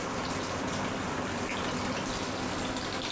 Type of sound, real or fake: real